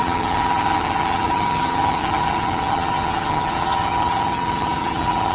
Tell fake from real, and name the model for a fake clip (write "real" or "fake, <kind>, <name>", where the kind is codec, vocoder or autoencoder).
fake, vocoder, HiFi-GAN